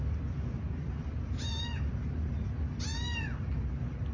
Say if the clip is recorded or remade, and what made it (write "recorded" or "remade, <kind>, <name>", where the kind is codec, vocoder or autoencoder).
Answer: recorded